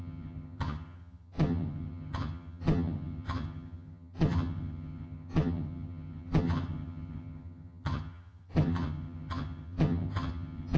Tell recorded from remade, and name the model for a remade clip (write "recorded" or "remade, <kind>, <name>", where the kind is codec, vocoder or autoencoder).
remade, vocoder, HiFi-GAN